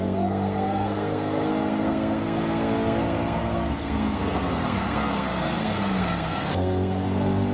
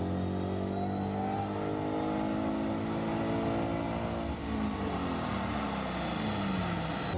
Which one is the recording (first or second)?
second